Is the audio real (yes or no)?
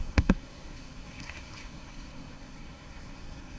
no